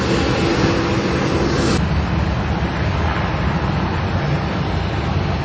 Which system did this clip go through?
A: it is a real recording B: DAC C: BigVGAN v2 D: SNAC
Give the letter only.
A